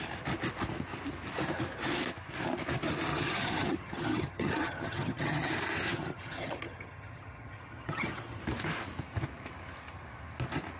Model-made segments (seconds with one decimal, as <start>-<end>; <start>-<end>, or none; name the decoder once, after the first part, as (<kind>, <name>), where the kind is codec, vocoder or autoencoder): 3.1-5.5 (vocoder, HiFi-GAN); 5.9-8.4